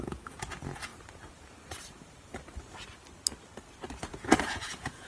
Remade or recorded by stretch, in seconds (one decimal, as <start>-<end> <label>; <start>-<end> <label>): 0.0-0.9 remade; 0.9-4.0 recorded; 4.0-5.1 remade